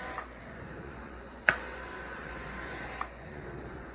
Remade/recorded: remade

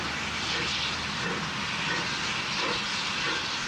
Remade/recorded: recorded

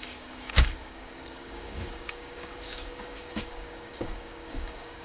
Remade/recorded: remade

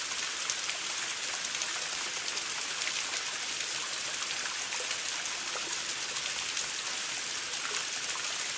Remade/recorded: recorded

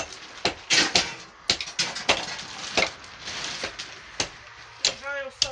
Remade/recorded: recorded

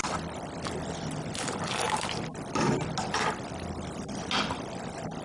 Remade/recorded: recorded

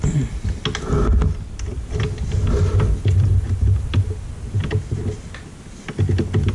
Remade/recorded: recorded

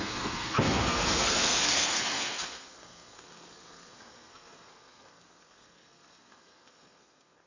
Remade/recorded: remade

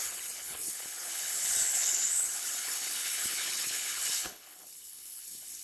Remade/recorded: remade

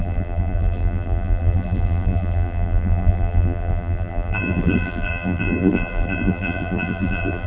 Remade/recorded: remade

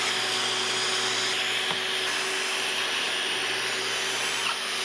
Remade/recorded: recorded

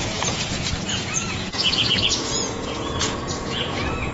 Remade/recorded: remade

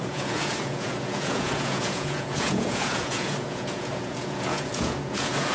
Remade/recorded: remade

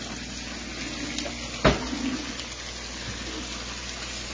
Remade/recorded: recorded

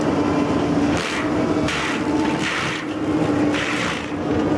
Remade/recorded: recorded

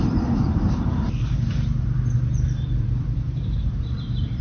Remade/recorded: remade